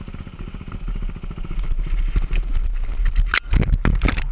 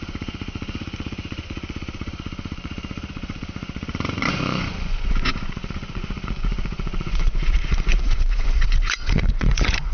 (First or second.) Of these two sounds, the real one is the first